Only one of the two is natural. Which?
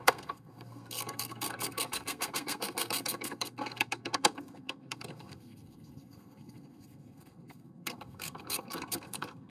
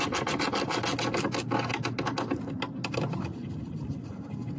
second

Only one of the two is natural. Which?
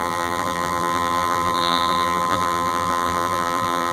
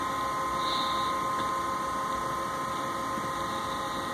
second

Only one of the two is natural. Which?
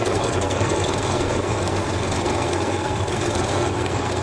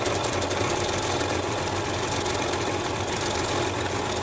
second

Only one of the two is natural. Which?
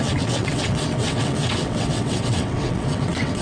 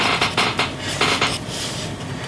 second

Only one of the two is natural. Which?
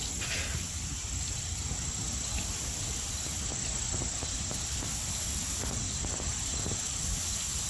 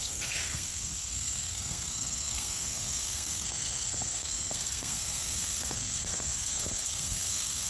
first